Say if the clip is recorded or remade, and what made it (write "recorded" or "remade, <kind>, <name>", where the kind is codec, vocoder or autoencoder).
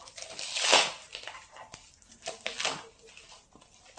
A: recorded